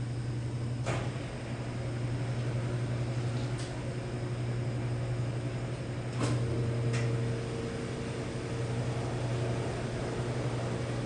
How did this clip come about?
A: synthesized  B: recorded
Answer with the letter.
B